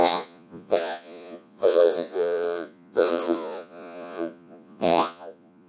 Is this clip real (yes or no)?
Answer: no